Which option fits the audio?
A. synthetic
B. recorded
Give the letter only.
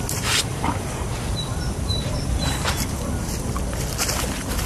A